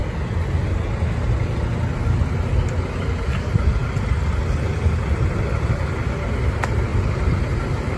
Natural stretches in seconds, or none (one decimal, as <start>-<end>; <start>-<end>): 0.0-6.9